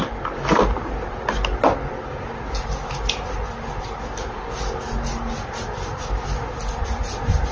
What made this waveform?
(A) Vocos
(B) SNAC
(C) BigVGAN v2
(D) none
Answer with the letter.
D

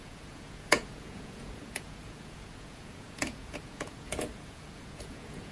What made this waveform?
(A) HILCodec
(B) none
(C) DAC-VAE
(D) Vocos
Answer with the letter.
D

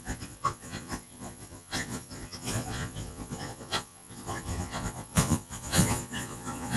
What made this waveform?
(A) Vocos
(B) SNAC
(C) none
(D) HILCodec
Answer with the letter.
A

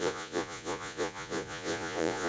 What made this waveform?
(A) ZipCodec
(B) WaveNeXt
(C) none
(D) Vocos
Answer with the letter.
D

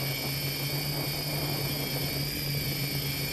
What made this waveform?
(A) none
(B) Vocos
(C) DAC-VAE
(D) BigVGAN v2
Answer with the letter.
A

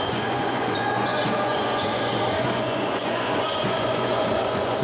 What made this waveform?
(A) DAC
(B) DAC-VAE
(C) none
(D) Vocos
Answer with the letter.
D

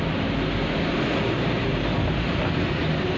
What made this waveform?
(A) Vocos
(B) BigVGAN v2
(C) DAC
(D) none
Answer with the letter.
D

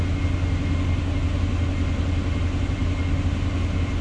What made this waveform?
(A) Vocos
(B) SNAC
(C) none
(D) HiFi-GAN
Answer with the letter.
C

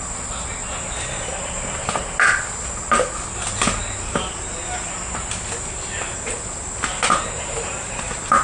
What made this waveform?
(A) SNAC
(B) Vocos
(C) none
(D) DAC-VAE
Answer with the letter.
C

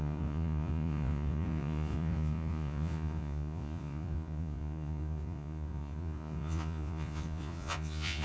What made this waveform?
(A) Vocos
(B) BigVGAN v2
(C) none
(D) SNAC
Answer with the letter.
A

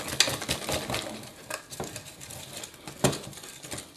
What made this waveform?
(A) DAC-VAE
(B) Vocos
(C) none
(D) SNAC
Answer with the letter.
C